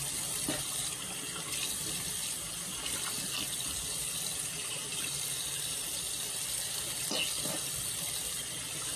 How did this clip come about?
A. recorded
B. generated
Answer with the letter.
A